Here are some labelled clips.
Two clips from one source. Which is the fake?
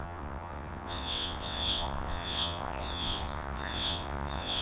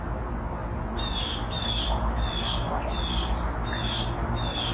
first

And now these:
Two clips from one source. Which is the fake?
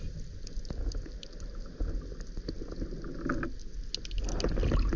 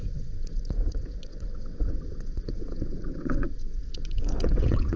second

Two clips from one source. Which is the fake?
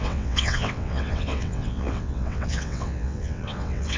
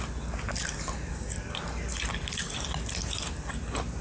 first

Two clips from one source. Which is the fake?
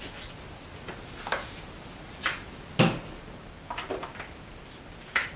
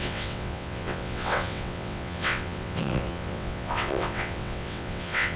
second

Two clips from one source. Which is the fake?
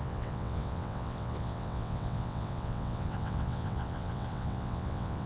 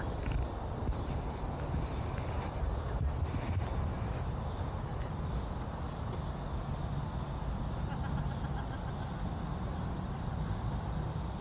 first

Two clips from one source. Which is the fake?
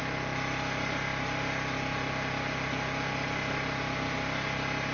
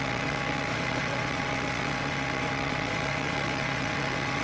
second